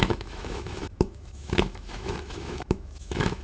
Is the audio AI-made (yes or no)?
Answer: yes